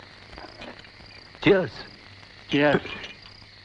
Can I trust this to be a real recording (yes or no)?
yes